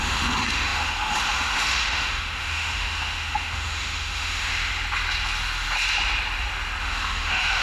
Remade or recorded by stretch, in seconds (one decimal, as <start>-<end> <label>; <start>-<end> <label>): 0.0-4.7 remade; 4.7-6.8 recorded; 6.8-7.6 remade